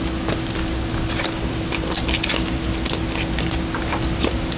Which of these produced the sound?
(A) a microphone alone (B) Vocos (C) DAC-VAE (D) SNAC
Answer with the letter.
A